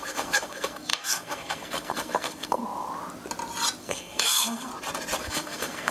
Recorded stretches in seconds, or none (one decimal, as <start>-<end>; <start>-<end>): 2.6-3.8; 4.7-5.2